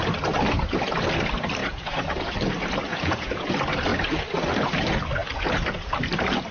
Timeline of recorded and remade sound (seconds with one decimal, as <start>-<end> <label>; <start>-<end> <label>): 0.0-1.6 recorded; 1.6-2.3 remade; 2.3-2.9 recorded; 2.9-3.5 remade; 3.5-6.5 recorded